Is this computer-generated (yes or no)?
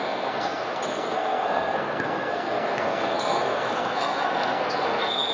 yes